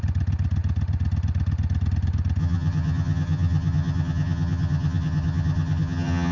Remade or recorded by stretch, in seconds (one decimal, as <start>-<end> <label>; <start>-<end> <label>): 0.0-2.4 recorded; 2.4-6.3 remade